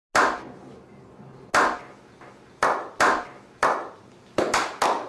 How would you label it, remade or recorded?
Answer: recorded